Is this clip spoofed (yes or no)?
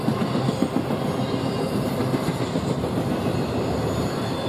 no